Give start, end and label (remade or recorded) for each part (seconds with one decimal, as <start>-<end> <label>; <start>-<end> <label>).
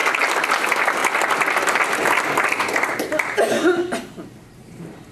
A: 0.0-0.5 recorded; 0.5-1.0 remade; 1.0-2.6 recorded; 2.6-3.8 remade; 3.8-4.4 recorded; 4.4-5.1 remade